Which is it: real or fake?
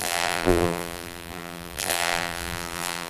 fake